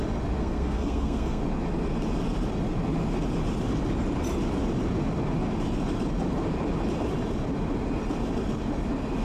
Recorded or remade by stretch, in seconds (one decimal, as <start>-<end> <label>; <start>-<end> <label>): 0.0-0.4 recorded; 0.4-1.4 remade; 1.4-9.2 recorded